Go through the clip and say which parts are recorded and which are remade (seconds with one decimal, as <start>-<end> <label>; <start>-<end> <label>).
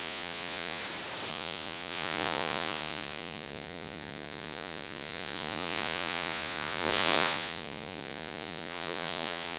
0.0-0.8 remade; 0.8-1.3 recorded; 1.3-9.6 remade